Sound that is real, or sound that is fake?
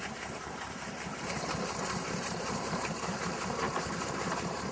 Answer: fake